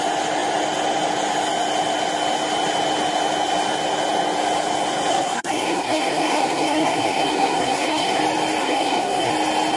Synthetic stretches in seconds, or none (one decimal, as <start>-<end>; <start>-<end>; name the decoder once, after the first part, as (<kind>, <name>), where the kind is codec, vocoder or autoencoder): 5.1-8.2 (codec, SNAC); 8.6-9.3

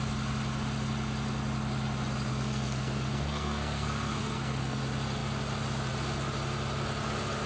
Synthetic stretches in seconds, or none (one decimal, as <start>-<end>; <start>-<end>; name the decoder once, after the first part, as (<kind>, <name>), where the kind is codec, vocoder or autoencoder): 2.3-4.8 (codec, SNAC)